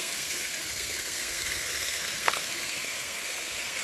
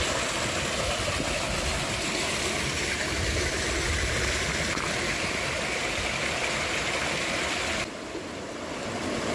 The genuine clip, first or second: second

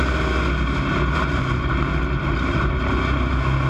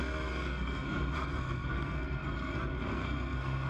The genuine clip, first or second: first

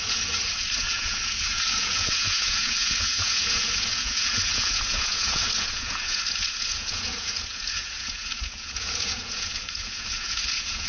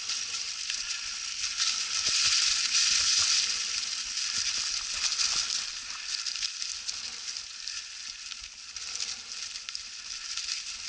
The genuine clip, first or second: second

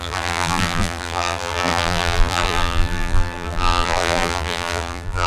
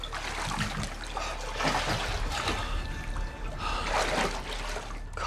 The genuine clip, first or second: second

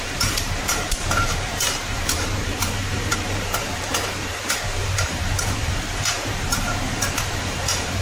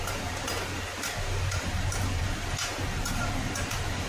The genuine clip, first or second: second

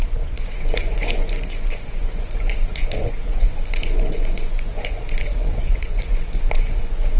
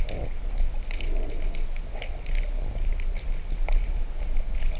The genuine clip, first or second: second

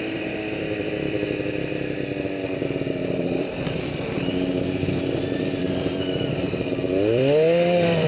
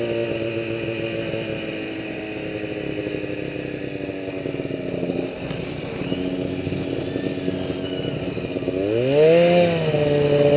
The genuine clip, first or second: second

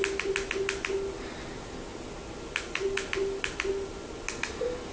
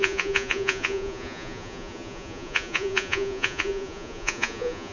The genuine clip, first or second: first